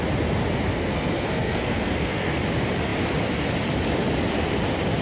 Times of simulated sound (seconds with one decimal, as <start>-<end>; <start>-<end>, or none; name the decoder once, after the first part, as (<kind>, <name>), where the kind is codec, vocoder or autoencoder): 0.9-2.4 (codec, SNAC)

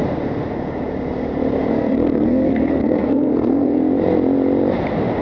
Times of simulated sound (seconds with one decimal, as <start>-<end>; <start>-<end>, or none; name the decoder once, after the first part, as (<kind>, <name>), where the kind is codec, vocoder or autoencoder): 1.7-3.8 (codec, SNAC)

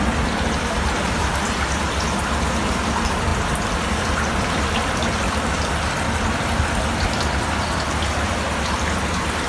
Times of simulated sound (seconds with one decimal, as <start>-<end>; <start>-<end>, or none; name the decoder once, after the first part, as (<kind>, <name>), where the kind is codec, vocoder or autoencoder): none

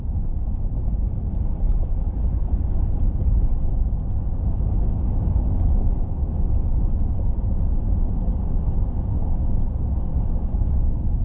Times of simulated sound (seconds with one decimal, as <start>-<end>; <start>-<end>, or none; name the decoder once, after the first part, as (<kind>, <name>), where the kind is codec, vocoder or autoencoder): none

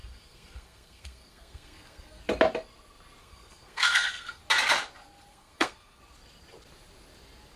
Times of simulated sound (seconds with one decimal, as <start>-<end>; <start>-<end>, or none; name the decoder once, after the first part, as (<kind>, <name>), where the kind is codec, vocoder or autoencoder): 0.0-2.2 (codec, SNAC); 3.2-4.4; 5.3-6.0

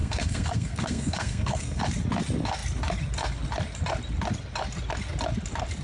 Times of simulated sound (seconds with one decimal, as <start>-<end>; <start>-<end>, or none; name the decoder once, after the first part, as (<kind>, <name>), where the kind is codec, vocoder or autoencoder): 0.0-1.8 (codec, SNAC)